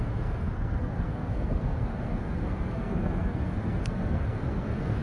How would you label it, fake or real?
fake